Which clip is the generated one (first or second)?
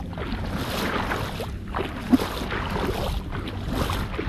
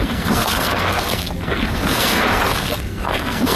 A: second